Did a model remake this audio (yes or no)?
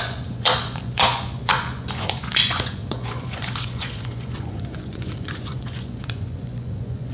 yes